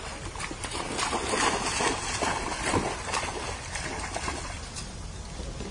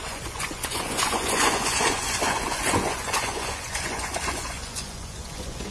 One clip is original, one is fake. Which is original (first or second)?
first